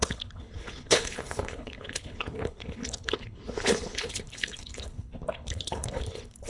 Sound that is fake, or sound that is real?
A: fake